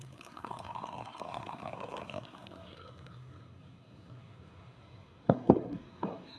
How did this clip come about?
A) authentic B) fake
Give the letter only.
B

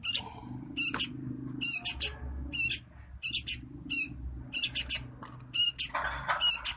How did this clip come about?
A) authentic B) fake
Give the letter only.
A